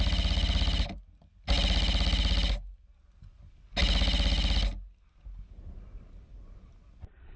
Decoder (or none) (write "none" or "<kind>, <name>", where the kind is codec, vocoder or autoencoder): none